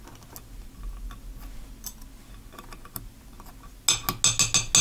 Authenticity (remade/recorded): recorded